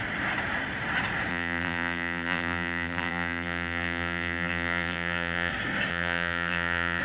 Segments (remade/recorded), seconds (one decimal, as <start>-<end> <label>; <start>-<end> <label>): 0.0-1.3 recorded; 1.3-5.5 remade; 5.5-5.9 recorded; 5.9-7.0 remade